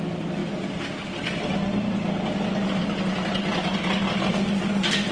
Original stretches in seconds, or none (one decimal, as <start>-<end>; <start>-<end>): 0.0-5.1